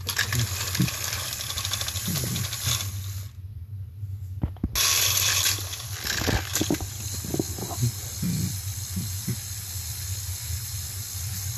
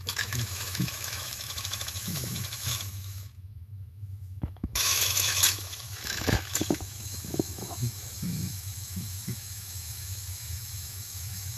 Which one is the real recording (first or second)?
first